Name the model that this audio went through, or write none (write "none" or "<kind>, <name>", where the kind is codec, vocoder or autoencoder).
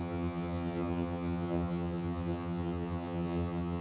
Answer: vocoder, HiFi-GAN